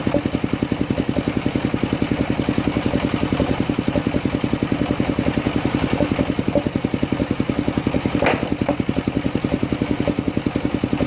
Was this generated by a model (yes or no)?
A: no